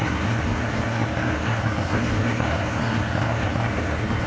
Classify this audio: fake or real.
fake